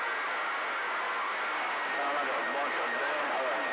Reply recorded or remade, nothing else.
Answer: recorded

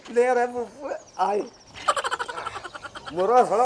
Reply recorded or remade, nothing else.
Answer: recorded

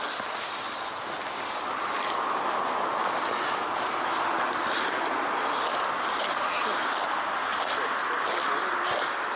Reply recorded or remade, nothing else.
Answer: recorded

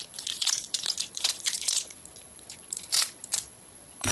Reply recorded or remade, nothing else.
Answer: remade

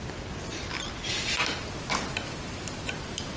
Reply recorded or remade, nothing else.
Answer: recorded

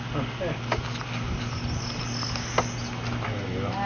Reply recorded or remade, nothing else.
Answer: recorded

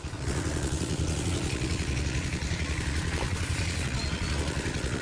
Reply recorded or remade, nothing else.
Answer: remade